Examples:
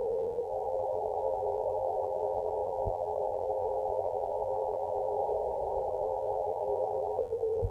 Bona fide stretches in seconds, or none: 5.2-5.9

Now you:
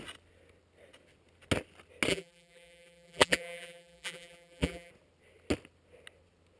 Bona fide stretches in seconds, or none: 0.0-2.1; 4.9-6.6